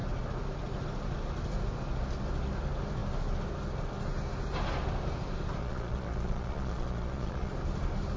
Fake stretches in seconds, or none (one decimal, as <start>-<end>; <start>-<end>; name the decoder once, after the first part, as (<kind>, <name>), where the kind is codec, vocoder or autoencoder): 5.6-7.5 (vocoder, Vocos)